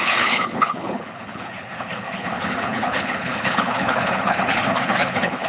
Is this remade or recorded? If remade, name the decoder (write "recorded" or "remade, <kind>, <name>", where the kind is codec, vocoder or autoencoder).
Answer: remade, codec, HILCodec